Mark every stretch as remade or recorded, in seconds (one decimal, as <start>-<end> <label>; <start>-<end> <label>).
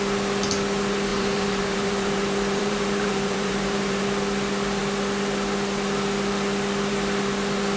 0.0-1.1 recorded; 1.1-4.0 remade; 4.0-7.8 recorded